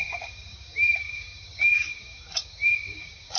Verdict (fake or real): fake